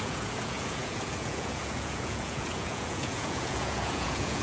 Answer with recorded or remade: remade